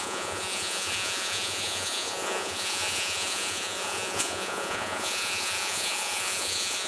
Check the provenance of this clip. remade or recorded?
remade